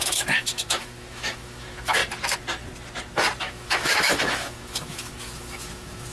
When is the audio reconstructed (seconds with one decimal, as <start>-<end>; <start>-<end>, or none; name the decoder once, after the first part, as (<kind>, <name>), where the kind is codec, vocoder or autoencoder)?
0.0-2.0 (autoencoder, DAC-VAE); 3.4-6.1